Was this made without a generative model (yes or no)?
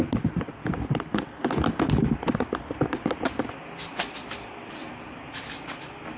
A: yes